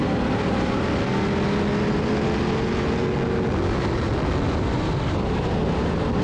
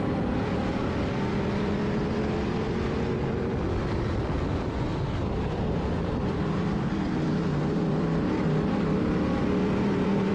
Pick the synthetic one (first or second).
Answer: second